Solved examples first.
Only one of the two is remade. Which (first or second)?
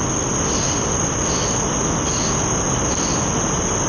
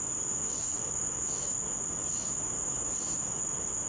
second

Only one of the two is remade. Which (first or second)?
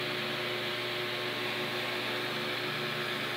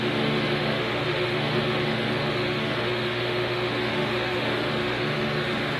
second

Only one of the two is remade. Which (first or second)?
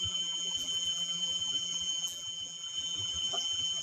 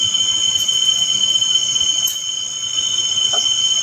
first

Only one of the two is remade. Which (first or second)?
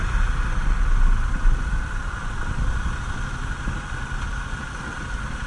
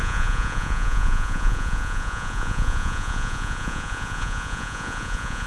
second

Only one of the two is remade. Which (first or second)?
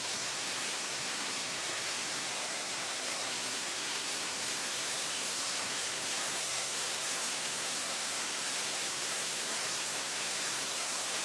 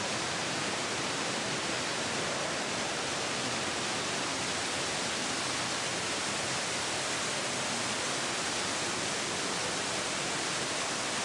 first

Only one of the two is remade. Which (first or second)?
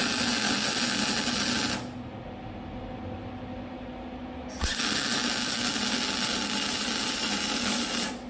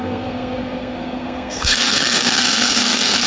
second